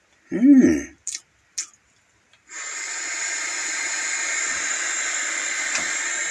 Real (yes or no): yes